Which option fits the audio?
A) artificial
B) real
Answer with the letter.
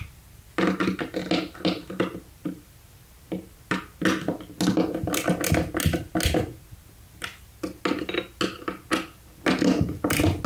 B